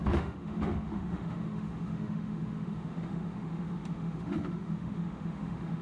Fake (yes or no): yes